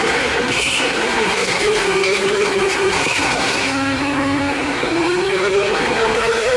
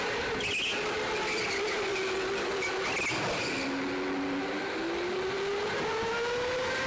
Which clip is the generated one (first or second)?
first